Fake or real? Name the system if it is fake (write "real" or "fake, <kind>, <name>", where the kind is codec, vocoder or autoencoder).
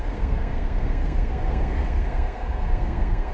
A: fake, codec, SNAC